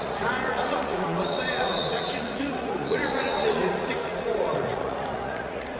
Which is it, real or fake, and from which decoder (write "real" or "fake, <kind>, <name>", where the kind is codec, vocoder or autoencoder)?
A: fake, vocoder, Vocos